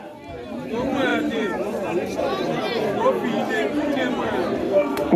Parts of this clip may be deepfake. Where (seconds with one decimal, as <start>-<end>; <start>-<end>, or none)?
4.6-5.2